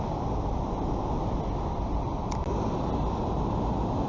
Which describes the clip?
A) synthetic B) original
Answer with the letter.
B